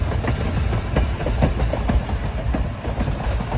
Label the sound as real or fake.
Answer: real